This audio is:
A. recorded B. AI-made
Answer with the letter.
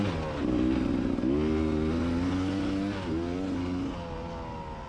A